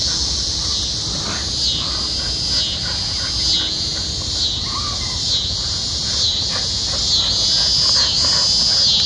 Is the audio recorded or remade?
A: recorded